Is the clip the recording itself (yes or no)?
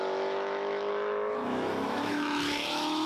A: no